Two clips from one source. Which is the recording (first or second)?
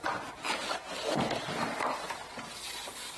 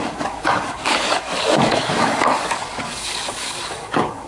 first